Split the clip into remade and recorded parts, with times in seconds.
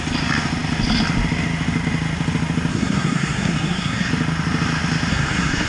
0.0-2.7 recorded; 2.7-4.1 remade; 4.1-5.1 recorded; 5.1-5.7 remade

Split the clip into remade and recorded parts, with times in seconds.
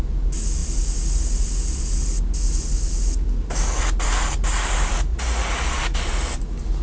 0.0-5.1 recorded; 5.1-5.6 remade; 5.6-6.8 recorded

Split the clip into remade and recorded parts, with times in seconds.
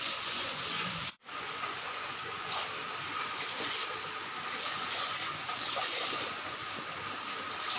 0.0-2.6 remade; 2.6-3.1 recorded; 3.1-3.8 remade; 3.8-4.6 recorded; 4.6-6.6 remade; 6.6-7.8 recorded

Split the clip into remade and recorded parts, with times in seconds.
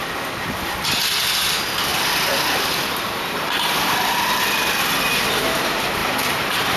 0.0-6.0 recorded; 6.0-6.8 remade